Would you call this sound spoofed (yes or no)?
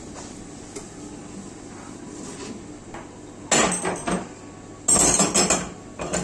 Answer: no